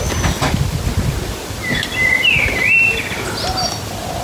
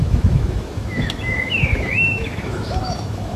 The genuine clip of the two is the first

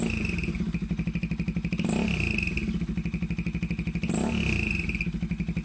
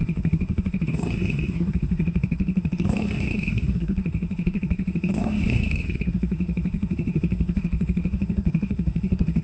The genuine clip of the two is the first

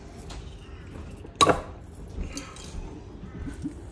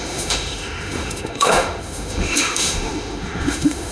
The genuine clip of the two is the first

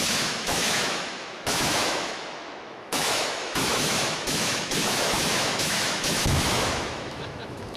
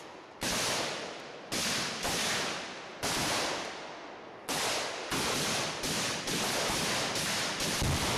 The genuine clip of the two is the second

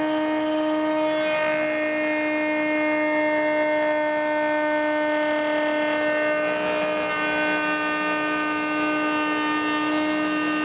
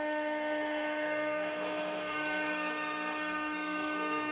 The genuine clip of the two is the first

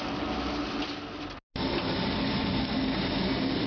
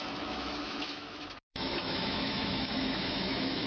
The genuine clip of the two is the first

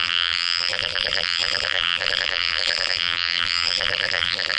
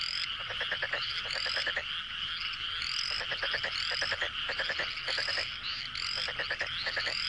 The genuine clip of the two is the second